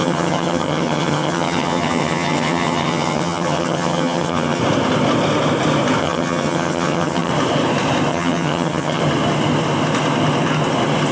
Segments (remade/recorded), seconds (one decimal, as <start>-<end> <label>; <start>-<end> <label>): 0.0-4.6 remade; 4.6-6.0 recorded; 6.0-7.3 remade; 7.3-8.1 recorded; 8.1-9.0 remade; 9.0-11.1 recorded